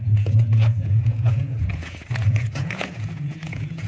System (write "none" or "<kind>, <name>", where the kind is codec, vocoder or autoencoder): vocoder, Vocos